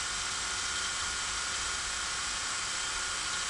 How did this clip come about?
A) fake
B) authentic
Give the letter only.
B